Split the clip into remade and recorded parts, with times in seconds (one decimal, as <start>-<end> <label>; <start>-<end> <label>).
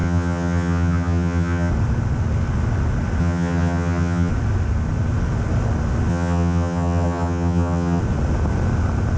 0.0-1.7 remade; 1.7-3.2 recorded; 3.2-4.3 remade; 4.3-6.1 recorded; 6.1-8.0 remade; 8.0-9.2 recorded